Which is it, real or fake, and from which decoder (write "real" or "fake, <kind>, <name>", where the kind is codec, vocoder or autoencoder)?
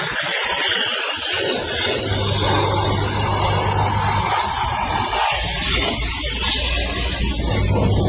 real